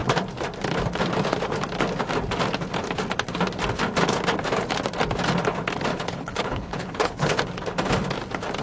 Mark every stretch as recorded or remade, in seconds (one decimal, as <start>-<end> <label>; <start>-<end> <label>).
0.0-5.9 recorded; 5.9-7.3 remade; 7.3-8.6 recorded